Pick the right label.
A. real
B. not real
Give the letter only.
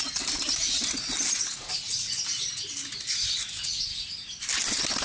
A